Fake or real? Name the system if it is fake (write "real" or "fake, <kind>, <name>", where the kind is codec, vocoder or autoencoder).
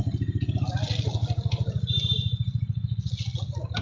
real